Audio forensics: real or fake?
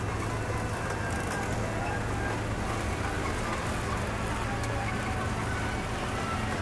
real